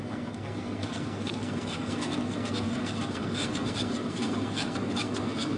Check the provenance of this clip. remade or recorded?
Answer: remade